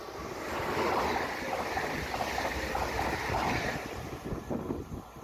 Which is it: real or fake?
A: real